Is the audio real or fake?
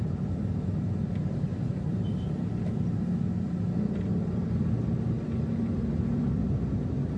real